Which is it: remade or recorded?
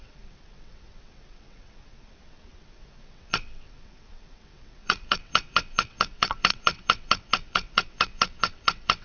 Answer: remade